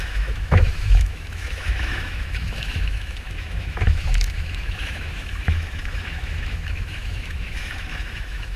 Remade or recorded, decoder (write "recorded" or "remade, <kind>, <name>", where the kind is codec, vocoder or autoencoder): remade, autoencoder, DAC-VAE